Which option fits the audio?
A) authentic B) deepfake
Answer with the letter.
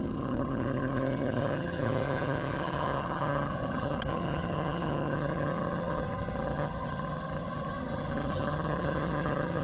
B